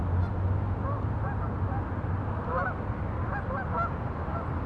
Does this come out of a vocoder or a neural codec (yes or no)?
no